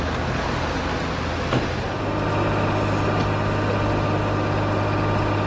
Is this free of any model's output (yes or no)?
yes